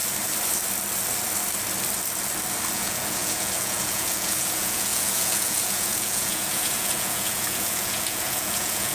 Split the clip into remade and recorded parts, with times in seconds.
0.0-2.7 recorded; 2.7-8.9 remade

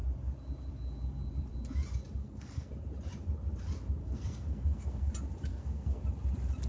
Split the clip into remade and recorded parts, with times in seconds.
0.0-2.2 recorded; 2.2-2.7 remade; 2.7-4.0 recorded; 4.0-5.1 remade; 5.1-5.5 recorded; 5.5-6.0 remade; 6.0-6.7 recorded

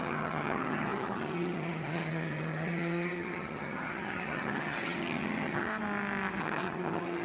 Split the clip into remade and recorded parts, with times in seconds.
0.0-5.7 remade; 5.7-6.4 recorded; 6.4-7.2 remade

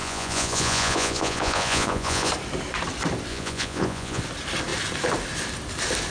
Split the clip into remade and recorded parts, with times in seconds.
0.0-2.3 remade; 2.3-3.3 recorded; 3.3-4.2 remade; 4.2-6.1 recorded

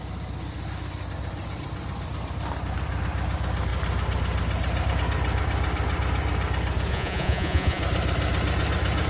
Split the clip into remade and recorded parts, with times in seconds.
0.0-6.9 recorded; 6.9-7.8 remade; 7.8-9.1 recorded